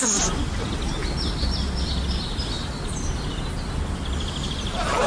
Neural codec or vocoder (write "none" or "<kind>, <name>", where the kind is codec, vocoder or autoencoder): none